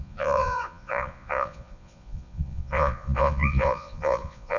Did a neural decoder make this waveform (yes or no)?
yes